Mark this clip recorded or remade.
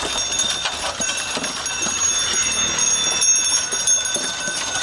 recorded